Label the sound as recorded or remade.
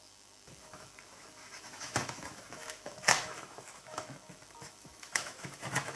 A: remade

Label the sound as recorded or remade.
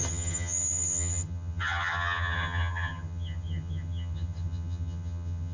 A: remade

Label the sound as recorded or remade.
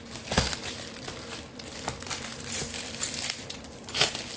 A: recorded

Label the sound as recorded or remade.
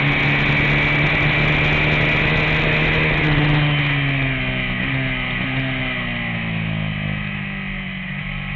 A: recorded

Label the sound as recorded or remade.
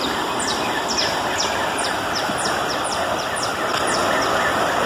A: remade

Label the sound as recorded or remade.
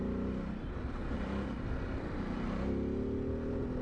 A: recorded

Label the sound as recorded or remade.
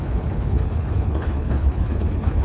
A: remade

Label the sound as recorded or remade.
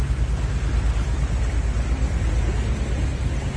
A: recorded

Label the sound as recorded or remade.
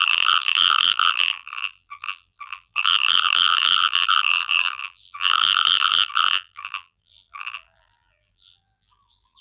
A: remade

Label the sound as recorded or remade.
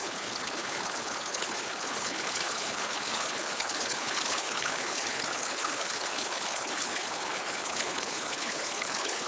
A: remade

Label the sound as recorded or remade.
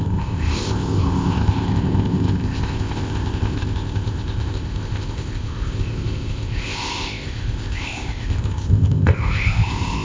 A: remade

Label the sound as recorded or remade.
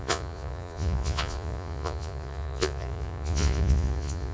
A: remade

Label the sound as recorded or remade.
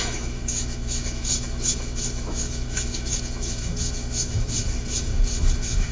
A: remade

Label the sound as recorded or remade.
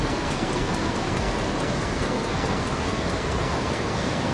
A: remade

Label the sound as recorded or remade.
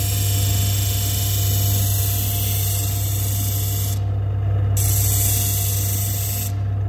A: recorded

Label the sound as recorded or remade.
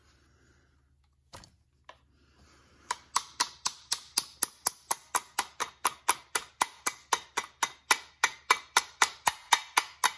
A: recorded